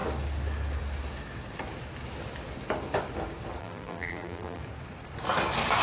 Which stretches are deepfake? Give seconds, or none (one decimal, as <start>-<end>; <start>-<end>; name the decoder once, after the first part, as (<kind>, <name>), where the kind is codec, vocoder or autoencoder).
3.6-4.6 (vocoder, BigVGAN v2)